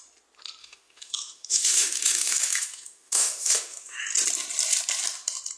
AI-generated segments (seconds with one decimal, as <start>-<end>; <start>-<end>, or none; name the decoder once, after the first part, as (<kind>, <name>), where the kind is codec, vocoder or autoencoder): 0.6-4.0 (autoencoder, DAC-VAE)